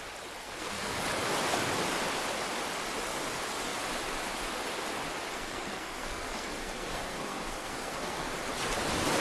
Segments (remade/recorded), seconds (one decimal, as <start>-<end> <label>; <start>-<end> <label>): 0.0-0.4 recorded; 0.4-1.0 remade; 1.0-5.3 recorded; 5.3-8.3 remade; 8.3-9.2 recorded